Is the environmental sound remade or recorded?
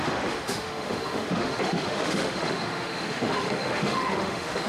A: remade